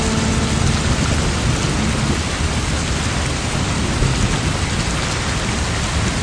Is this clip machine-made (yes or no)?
no